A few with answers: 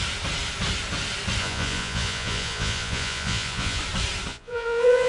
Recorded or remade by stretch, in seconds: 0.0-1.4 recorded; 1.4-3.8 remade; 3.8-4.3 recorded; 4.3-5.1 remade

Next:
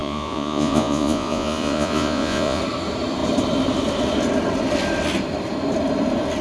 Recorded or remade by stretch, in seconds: 0.0-2.6 remade; 2.6-6.4 recorded

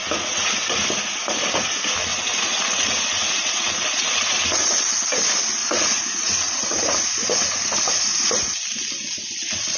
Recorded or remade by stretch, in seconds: 0.0-0.5 remade; 0.5-2.1 recorded; 2.1-4.7 remade; 4.7-5.6 recorded; 5.6-8.3 remade; 8.3-9.8 recorded